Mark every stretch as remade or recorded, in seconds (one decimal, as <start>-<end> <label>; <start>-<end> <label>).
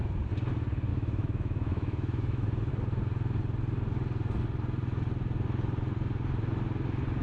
0.0-0.9 recorded; 0.9-2.7 remade; 2.7-7.2 recorded